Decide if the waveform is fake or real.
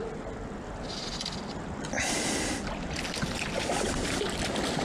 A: real